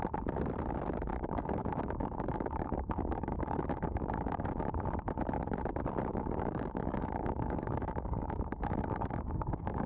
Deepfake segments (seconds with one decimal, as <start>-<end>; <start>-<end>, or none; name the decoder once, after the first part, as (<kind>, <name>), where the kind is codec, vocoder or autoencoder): 1.1-4.6 (codec, DAC); 6.1-9.9